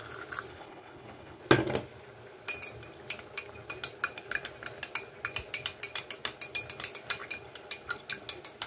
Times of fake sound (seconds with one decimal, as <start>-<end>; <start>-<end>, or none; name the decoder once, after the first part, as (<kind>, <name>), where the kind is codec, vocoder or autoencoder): 0.5-1.4 (codec, HILCodec)